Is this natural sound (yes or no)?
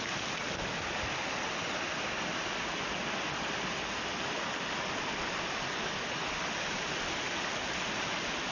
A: yes